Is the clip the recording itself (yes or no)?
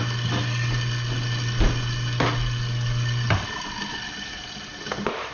yes